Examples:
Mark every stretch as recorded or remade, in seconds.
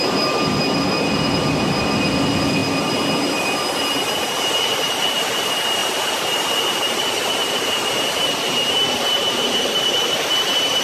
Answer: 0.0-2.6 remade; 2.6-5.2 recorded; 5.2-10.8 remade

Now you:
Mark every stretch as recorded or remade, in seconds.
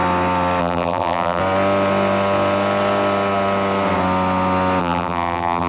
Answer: 0.0-0.6 recorded; 0.6-1.4 remade; 1.4-4.8 recorded; 4.8-5.7 remade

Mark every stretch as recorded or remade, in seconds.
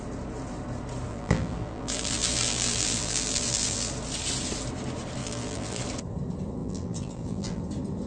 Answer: 0.0-1.1 recorded; 1.1-3.9 remade; 3.9-5.2 recorded; 5.2-5.8 remade; 5.8-6.6 recorded; 6.6-7.6 remade; 7.6-8.1 recorded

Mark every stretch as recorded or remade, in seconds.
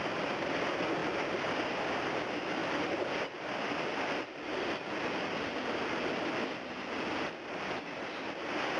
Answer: 0.0-8.8 recorded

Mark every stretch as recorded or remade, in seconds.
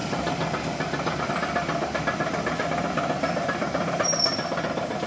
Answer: 0.0-1.2 recorded; 1.2-5.1 remade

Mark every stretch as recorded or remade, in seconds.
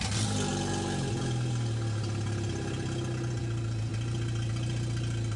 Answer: 0.0-5.4 recorded